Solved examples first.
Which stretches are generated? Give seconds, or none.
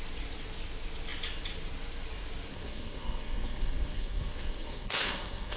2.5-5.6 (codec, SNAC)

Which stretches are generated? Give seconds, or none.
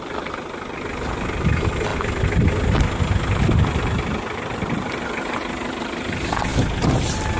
none